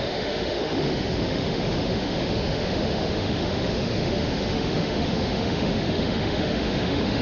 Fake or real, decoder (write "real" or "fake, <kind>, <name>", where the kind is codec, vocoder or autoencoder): fake, autoencoder, DAC-VAE